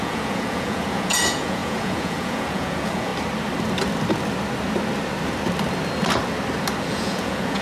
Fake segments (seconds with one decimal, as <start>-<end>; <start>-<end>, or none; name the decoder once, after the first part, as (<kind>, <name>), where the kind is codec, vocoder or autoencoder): 0.0-3.1 (vocoder, Vocos); 6.9-7.6